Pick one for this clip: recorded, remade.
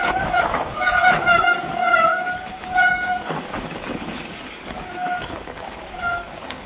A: remade